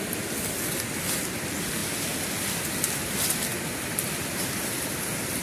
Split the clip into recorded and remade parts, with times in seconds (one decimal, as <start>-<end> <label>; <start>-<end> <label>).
0.0-3.5 recorded; 3.5-4.5 remade; 4.5-5.4 recorded